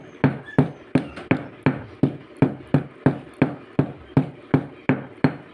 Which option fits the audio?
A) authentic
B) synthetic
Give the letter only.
A